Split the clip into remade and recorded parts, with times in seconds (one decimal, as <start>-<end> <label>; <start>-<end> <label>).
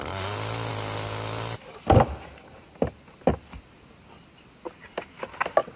0.0-5.8 recorded